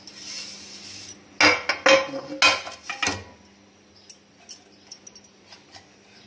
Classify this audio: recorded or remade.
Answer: recorded